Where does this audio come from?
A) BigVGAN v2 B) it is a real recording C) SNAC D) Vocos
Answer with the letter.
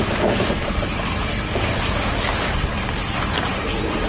B